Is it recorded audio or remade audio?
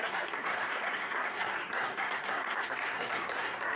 remade